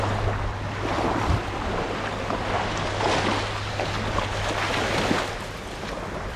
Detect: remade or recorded recorded